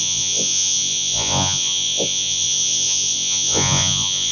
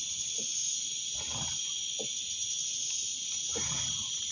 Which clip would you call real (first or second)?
second